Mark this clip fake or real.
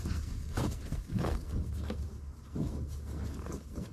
fake